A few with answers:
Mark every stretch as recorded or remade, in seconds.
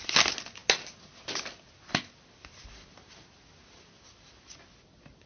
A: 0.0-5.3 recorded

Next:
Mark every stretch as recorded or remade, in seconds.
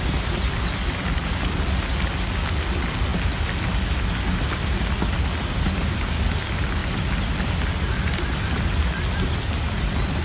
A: 0.0-10.2 recorded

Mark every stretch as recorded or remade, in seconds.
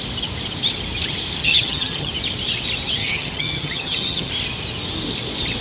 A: 0.0-1.4 recorded; 1.4-2.1 remade; 2.1-3.0 recorded; 3.0-4.3 remade; 4.3-5.6 recorded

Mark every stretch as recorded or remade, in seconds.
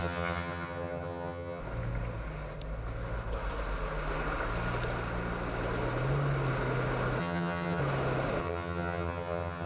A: 0.0-1.6 remade; 1.6-7.2 recorded; 7.2-7.8 remade; 7.8-8.4 recorded; 8.4-9.7 remade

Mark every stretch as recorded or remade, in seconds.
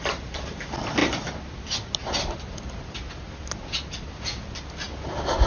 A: 0.0-5.5 recorded